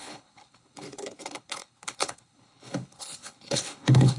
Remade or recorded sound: remade